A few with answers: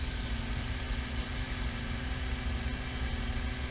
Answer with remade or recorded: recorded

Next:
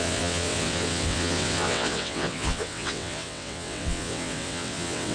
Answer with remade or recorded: remade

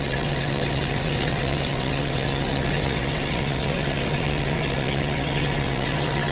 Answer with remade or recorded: remade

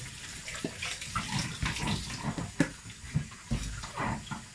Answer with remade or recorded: recorded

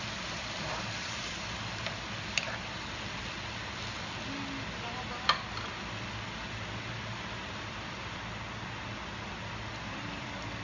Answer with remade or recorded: recorded